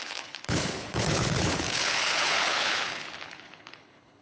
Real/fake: fake